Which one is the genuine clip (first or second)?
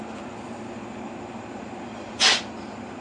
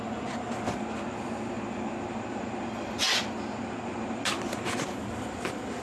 second